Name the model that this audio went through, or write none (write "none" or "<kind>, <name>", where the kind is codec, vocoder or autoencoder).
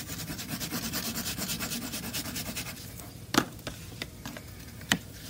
vocoder, BigVGAN v2